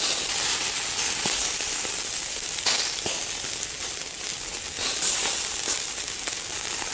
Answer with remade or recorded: recorded